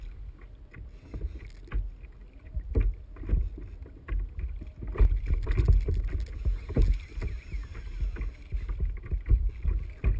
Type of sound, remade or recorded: recorded